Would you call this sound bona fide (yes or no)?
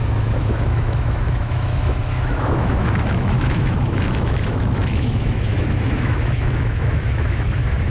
no